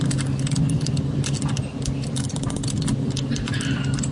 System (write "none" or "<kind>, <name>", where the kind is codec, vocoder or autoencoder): none